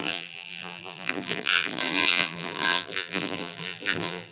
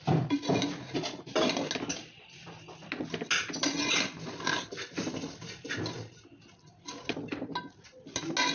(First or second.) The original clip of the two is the second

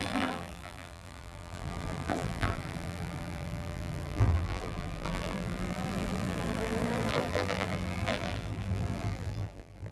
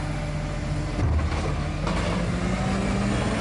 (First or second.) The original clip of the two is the second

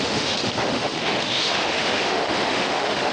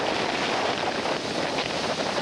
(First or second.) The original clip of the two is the second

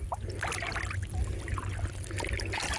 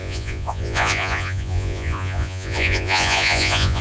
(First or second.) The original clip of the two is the first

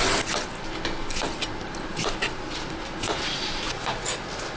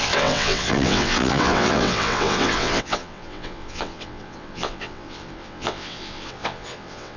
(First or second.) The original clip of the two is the first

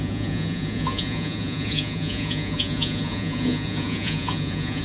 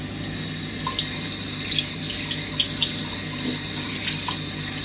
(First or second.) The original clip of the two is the second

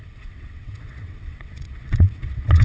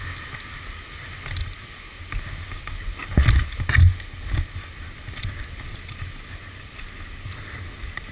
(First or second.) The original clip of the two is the second